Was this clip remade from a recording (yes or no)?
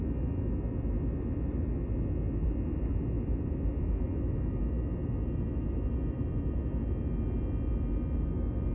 no